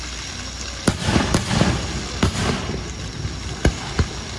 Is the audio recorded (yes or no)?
yes